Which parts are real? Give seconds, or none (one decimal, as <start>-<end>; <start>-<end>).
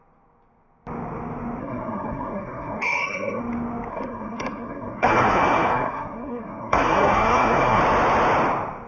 0.0-1.6; 3.4-3.9; 7.8-8.9